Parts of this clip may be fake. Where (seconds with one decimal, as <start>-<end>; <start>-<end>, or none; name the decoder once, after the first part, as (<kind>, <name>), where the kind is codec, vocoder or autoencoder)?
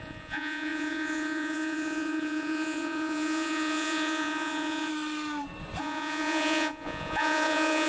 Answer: 0.0-4.9 (vocoder, Vocos); 5.8-7.9